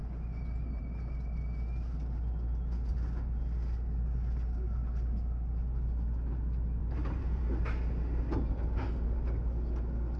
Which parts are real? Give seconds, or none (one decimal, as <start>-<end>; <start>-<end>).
0.0-6.8; 7.4-10.2